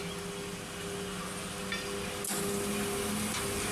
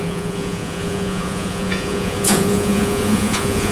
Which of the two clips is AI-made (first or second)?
second